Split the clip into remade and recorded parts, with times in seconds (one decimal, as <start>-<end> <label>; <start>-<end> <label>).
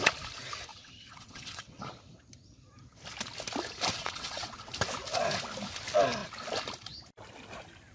0.0-0.7 recorded; 0.7-1.8 remade; 1.8-3.9 recorded; 3.9-4.7 remade; 4.7-7.9 recorded